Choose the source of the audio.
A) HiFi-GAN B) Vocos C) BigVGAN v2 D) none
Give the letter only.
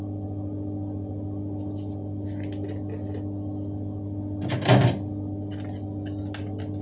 D